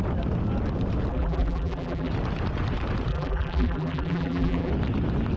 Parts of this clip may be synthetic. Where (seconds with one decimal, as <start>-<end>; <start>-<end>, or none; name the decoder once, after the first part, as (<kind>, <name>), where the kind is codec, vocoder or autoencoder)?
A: 1.1-2.1 (vocoder, BigVGAN v2); 3.1-4.7